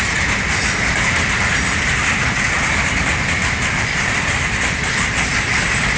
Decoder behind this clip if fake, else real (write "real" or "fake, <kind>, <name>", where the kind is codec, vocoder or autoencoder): real